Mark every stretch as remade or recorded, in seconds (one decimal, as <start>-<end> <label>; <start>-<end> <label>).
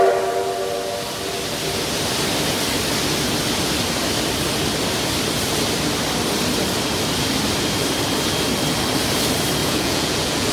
0.0-9.6 recorded; 9.6-10.5 remade